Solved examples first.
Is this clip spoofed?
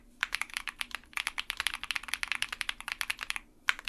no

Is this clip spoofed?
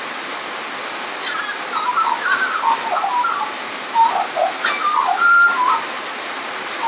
no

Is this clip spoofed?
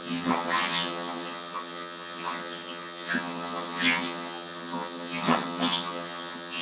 yes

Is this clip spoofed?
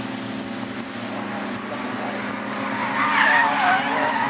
no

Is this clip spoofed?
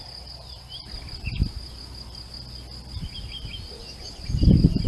no